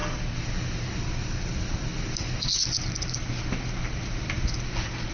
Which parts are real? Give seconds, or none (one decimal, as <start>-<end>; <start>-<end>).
0.0-5.1